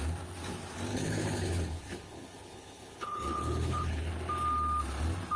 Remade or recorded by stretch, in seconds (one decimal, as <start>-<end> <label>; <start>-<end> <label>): 0.0-0.9 recorded; 0.9-4.1 remade; 4.1-5.4 recorded